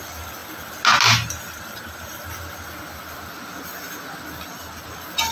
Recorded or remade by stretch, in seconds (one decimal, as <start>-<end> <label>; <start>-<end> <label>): 0.0-5.3 recorded